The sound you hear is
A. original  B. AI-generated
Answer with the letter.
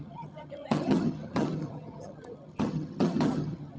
B